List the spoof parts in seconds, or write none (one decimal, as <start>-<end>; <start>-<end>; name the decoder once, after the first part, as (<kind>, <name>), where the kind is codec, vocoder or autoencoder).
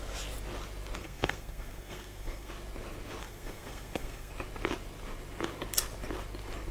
1.0-2.5 (codec, SNAC); 3.2-4.3